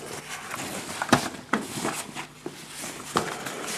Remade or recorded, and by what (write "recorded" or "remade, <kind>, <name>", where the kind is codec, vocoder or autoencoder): recorded